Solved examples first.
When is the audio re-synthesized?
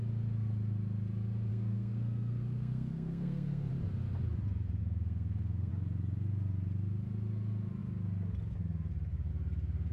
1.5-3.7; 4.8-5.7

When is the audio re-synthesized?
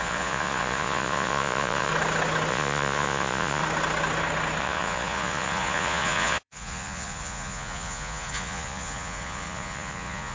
0.0-1.9; 2.5-3.6; 4.6-10.3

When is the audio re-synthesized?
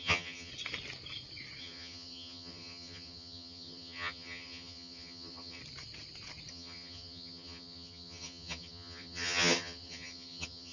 0.0-0.5; 1.6-5.6; 6.5-10.7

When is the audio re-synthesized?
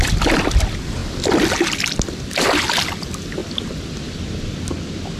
none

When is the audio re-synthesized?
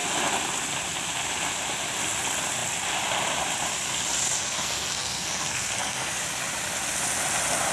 4.4-6.2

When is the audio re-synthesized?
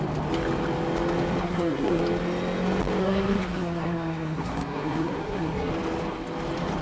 1.4-2.0; 3.0-5.7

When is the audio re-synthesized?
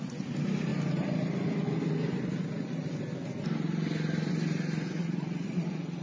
5.0-6.0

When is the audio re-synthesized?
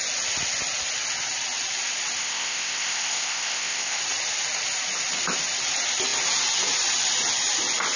2.2-4.0